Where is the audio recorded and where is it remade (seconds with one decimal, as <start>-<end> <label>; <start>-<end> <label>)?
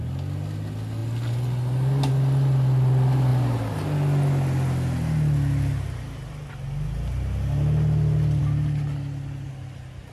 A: 0.0-10.1 recorded